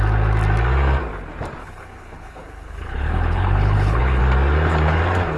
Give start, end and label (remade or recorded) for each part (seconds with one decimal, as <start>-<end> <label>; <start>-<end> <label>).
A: 0.0-1.6 recorded; 1.6-4.2 remade; 4.2-5.4 recorded